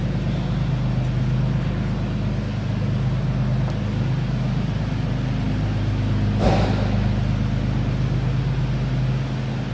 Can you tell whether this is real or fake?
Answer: real